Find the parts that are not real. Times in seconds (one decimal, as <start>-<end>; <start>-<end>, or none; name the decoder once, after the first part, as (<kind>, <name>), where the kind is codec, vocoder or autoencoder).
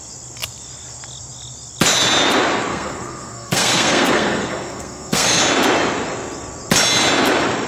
2.7-5.4 (codec, SNAC)